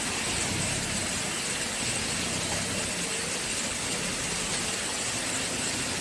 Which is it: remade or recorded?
recorded